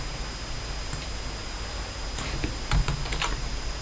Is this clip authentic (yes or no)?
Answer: yes